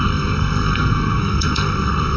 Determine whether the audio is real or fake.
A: fake